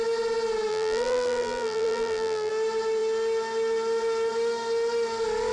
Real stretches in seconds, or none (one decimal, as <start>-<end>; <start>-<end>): 0.0-0.7; 2.5-5.5